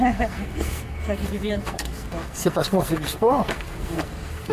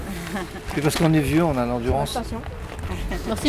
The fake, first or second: first